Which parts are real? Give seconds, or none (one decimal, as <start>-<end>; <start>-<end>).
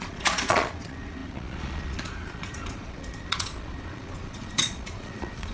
none